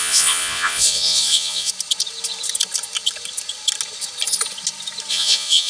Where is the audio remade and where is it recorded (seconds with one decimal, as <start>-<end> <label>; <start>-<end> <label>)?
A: 0.0-1.7 remade; 1.7-5.1 recorded; 5.1-5.7 remade